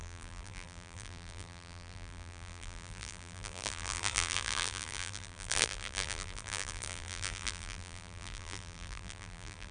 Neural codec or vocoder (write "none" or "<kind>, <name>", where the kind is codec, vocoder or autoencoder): vocoder, BigVGAN v2